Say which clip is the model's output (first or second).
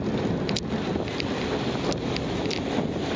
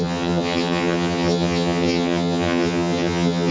second